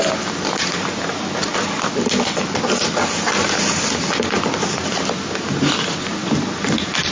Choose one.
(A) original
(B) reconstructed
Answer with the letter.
A